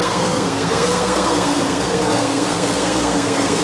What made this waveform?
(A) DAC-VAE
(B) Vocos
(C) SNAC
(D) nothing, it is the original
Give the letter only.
C